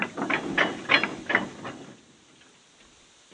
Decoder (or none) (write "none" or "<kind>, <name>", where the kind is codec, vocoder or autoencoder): none